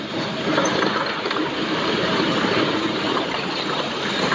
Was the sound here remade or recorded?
remade